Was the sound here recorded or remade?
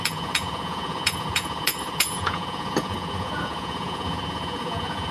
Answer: remade